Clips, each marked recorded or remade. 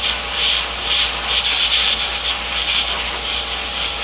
recorded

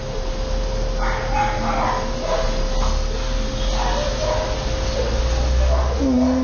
recorded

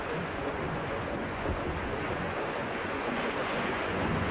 remade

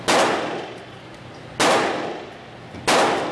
recorded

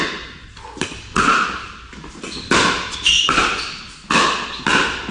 recorded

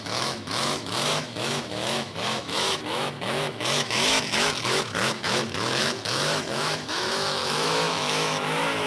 remade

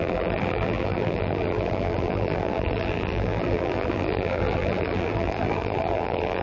remade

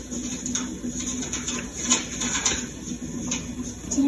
recorded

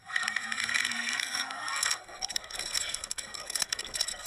remade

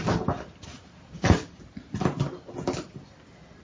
recorded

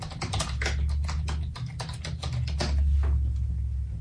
recorded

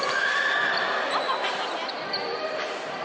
remade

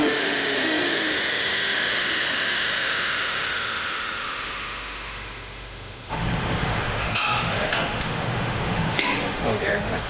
remade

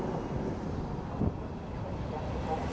recorded